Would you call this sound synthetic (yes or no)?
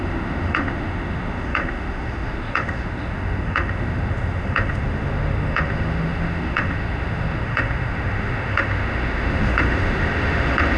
yes